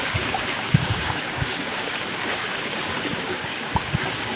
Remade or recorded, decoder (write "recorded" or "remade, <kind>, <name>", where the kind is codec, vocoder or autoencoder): remade, codec, DAC